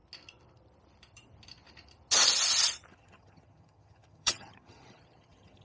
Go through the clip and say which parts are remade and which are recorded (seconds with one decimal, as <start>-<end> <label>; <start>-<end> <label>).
0.0-2.9 recorded; 2.9-5.6 remade